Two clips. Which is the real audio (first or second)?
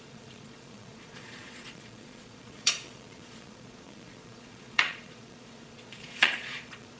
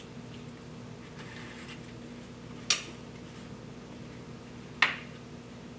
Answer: second